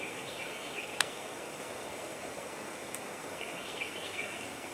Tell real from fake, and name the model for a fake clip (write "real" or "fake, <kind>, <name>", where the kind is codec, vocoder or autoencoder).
fake, codec, SNAC